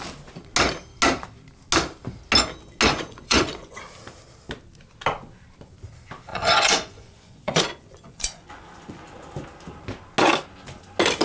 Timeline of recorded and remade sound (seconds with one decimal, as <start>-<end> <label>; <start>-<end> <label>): 0.0-2.9 recorded; 2.9-3.8 remade; 3.8-6.3 recorded; 6.3-9.0 remade; 9.0-11.2 recorded